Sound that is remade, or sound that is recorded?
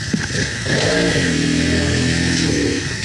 remade